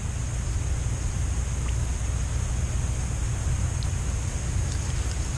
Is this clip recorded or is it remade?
recorded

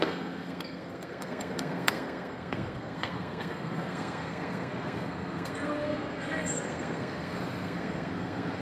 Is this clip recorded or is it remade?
remade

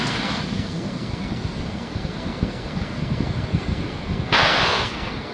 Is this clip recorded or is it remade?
remade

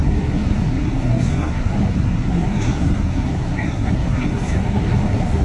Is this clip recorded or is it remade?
remade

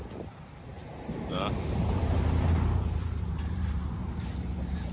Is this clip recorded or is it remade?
remade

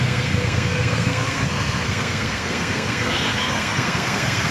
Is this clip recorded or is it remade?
remade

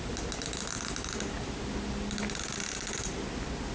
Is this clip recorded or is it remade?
recorded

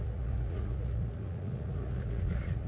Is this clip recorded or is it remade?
remade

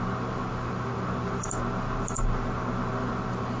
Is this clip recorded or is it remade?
recorded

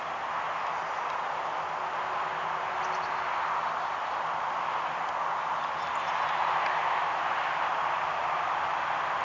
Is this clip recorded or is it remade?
recorded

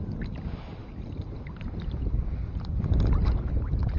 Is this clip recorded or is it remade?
recorded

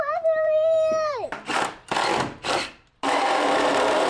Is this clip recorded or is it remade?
remade